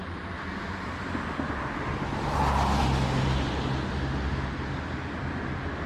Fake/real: real